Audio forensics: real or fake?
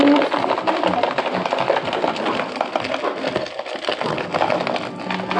real